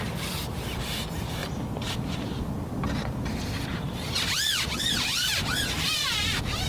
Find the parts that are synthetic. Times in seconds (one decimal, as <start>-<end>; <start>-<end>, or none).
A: 1.4-5.4